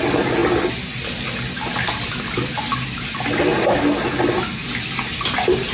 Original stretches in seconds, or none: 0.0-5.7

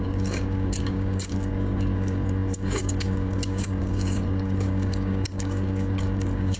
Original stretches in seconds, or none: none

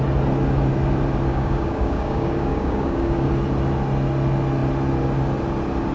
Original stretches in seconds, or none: 0.0-1.3; 3.3-5.9

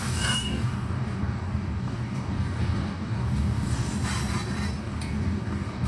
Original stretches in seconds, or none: 3.9-4.8

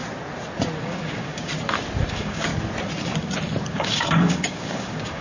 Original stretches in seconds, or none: 0.0-0.8; 1.5-2.1; 2.5-3.7

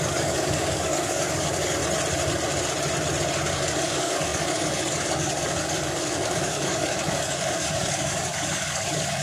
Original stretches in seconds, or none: 1.8-3.5

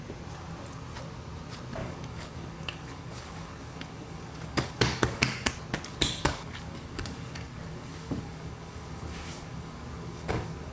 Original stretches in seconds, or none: 0.0-1.8; 5.5-5.9